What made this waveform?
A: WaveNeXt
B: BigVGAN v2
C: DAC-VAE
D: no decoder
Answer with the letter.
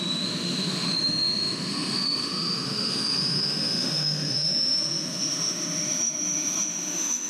C